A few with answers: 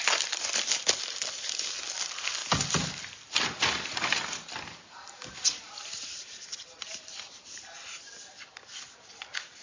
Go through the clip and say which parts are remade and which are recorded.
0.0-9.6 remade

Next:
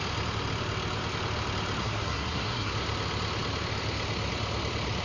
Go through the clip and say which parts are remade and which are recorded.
0.0-1.8 recorded; 1.8-2.7 remade; 2.7-5.0 recorded